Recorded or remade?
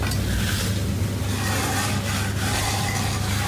recorded